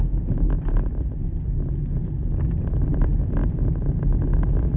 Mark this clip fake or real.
real